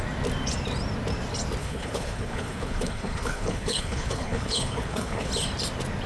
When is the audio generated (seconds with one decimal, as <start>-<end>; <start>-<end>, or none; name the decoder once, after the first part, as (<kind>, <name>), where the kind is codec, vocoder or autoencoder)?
1.6-5.3 (codec, HILCodec)